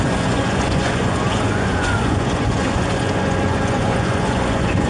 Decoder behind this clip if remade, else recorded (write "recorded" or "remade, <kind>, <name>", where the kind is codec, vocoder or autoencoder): remade, vocoder, Vocos